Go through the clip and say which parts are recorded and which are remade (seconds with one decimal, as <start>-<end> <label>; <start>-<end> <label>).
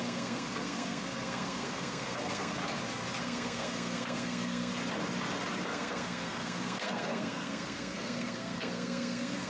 0.0-2.6 remade; 2.6-3.2 recorded; 3.2-4.7 remade; 4.7-5.6 recorded; 5.6-9.5 remade